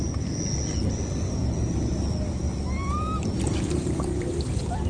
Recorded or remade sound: recorded